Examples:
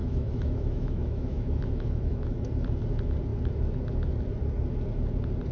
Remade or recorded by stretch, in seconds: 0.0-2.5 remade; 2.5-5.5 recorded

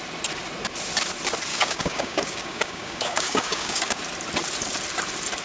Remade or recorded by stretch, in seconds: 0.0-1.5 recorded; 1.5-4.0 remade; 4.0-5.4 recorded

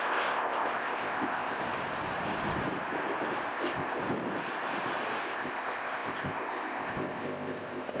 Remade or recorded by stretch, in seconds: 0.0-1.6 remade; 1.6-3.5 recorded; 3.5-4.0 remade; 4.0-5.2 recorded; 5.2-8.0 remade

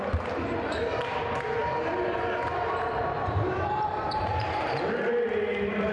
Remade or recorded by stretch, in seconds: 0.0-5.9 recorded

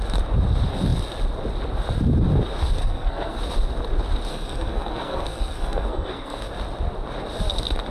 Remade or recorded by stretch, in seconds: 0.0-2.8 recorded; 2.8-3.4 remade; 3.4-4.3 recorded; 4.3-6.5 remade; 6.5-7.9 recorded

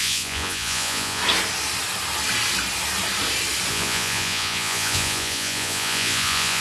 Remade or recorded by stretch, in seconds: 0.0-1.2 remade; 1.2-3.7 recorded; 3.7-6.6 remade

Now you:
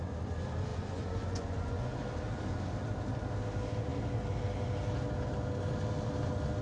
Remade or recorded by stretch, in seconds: 0.0-0.7 recorded; 0.7-2.0 remade; 2.0-6.6 recorded

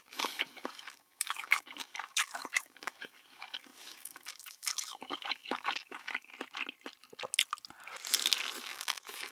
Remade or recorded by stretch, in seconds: 0.0-6.3 remade; 6.3-8.6 recorded; 8.6-9.3 remade